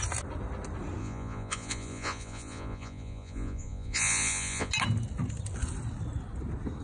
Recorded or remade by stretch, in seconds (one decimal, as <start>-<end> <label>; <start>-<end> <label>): 0.0-1.0 recorded; 1.0-4.7 remade; 4.7-6.8 recorded